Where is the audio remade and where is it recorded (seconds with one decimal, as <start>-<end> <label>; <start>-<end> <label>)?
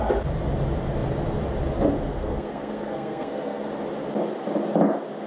0.0-2.1 recorded; 2.1-3.7 remade; 3.7-5.3 recorded